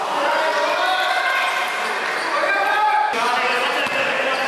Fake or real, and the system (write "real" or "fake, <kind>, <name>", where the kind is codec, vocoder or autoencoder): real